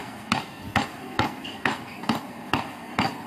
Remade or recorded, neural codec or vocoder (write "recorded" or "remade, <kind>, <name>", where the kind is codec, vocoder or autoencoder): remade, codec, SNAC